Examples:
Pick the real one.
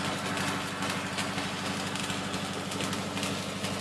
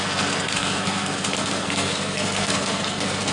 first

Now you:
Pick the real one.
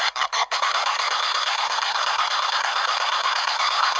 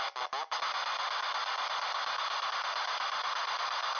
second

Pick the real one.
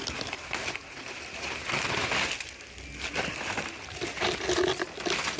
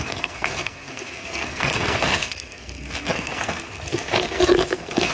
first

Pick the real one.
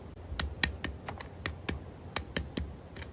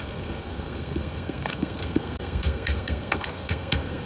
first